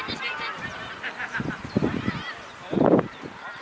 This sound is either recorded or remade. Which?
remade